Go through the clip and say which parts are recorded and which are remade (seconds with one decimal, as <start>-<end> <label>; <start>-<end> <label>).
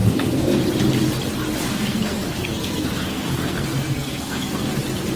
0.0-0.6 remade; 0.6-1.7 recorded; 1.7-4.8 remade; 4.8-5.2 recorded